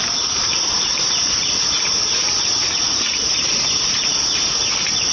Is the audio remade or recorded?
recorded